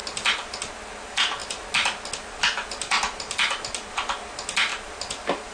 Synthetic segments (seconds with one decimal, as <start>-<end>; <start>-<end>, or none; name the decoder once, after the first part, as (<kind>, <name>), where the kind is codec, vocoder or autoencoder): none

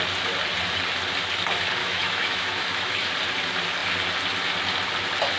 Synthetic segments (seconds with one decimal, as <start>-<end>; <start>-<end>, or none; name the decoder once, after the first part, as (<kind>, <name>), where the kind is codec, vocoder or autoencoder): 1.8-3.1 (autoencoder, DAC-VAE)

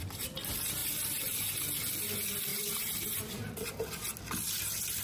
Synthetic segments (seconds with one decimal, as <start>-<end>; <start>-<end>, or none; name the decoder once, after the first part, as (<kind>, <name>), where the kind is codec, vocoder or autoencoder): 0.8-1.6 (vocoder, BigVGAN v2); 2.5-3.9

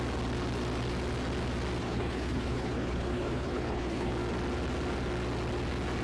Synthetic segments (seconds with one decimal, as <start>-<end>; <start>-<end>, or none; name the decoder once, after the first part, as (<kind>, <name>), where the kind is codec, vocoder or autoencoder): 1.8-4.1 (codec, HILCodec)

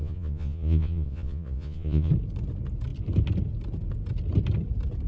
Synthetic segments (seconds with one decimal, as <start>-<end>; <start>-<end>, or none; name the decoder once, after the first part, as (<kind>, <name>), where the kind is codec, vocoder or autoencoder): 0.0-2.1 (vocoder, Vocos)